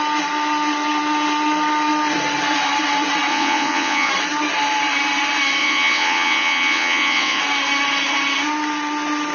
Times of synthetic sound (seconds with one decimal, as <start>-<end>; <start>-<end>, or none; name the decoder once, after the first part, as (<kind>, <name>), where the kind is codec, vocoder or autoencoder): 3.3-4.1 (vocoder, WaveNeXt); 5.6-7.4